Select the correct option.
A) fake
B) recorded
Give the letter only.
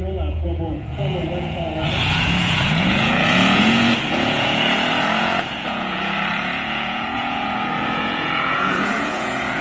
A